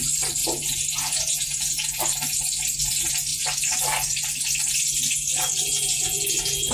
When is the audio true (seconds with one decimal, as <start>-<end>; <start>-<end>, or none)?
0.0-0.4; 2.0-5.7